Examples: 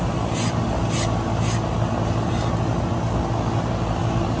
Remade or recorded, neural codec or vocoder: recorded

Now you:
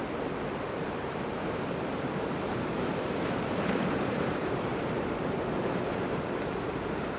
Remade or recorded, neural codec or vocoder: remade, vocoder, BigVGAN v2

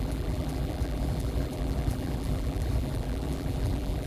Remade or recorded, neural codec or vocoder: remade, vocoder, BigVGAN v2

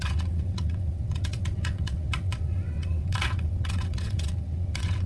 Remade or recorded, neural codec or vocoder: remade, vocoder, WaveNeXt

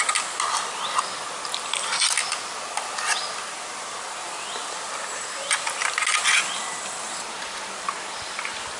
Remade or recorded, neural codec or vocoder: recorded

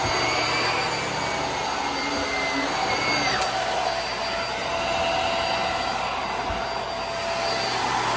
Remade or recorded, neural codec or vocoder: recorded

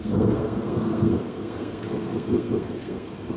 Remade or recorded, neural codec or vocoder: remade, codec, SNAC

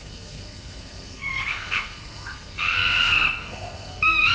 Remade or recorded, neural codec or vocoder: remade, codec, SNAC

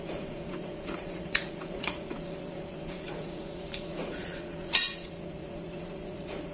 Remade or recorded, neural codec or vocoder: remade, vocoder, Vocos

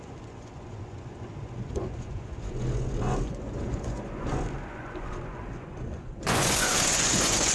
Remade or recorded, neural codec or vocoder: remade, vocoder, Vocos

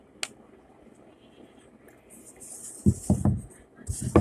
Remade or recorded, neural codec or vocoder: recorded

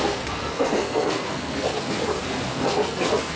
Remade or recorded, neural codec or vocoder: remade, codec, SNAC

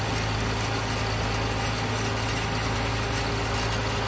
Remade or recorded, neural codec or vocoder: recorded